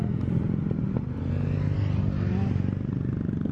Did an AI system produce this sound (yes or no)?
no